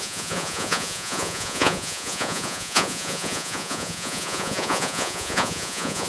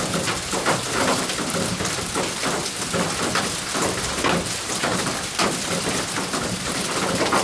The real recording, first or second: second